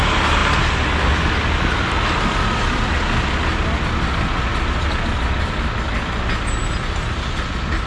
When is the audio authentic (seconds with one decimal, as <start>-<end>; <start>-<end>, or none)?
0.0-7.9